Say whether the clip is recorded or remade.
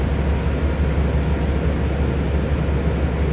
recorded